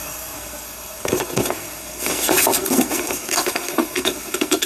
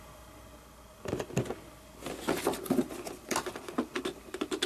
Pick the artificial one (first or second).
first